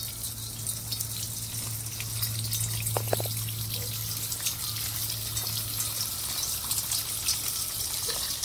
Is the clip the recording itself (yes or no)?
yes